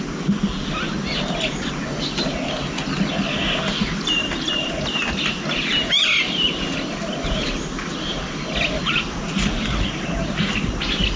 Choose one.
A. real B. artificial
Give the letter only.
A